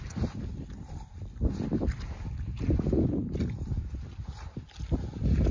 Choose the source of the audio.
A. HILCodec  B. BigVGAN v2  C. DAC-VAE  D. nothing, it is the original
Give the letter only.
D